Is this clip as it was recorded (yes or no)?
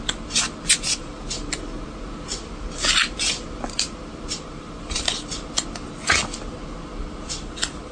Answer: yes